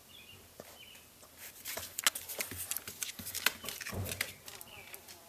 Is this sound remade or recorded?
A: recorded